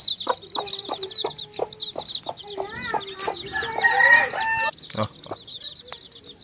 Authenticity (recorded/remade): recorded